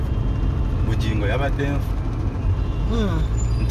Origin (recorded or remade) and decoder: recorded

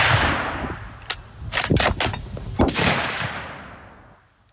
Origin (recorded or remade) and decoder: recorded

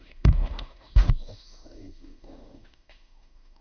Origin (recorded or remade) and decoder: remade, autoencoder, DAC-VAE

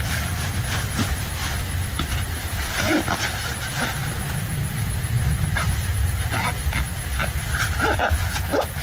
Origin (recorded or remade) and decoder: recorded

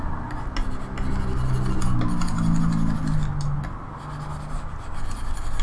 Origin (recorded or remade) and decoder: recorded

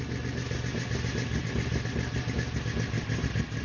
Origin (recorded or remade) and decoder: recorded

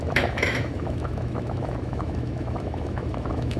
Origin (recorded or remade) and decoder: remade, autoencoder, DAC-VAE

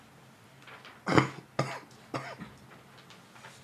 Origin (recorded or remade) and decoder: recorded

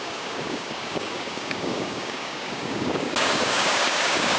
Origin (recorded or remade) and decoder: remade, codec, DAC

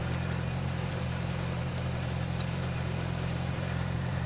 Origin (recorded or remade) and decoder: remade, vocoder, BigVGAN v2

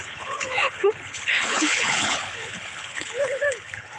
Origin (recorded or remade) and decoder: remade, codec, HILCodec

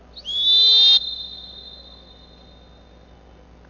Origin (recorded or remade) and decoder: recorded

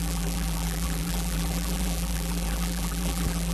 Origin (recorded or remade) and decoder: remade, vocoder, BigVGAN v2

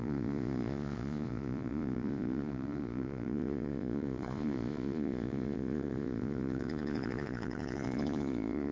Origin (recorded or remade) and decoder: remade, vocoder, Vocos